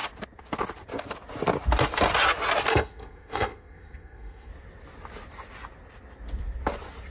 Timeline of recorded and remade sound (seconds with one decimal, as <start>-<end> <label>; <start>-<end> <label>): 0.0-2.7 recorded; 2.7-4.5 remade; 4.5-7.1 recorded